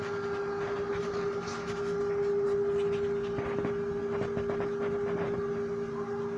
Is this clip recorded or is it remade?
recorded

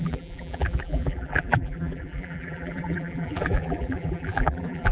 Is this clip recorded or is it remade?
remade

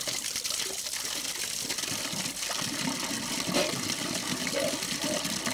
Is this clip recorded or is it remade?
recorded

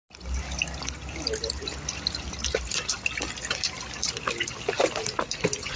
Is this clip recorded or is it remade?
recorded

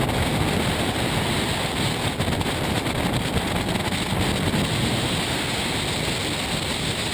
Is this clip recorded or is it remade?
recorded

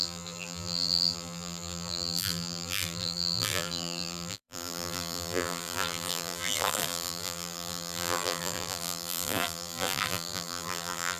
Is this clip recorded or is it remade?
remade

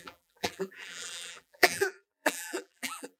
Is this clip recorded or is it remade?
remade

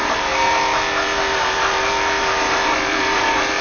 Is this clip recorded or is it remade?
remade